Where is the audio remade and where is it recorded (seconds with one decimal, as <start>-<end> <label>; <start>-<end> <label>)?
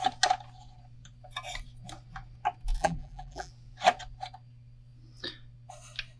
0.0-2.8 recorded; 2.8-3.5 remade; 3.5-6.2 recorded